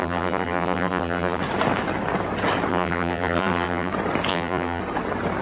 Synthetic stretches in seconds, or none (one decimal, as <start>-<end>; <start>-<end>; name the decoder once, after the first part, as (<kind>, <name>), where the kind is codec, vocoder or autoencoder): 0.0-1.4 (vocoder, BigVGAN v2); 2.7-3.9; 4.3-4.8